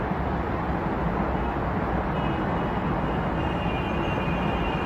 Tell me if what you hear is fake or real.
real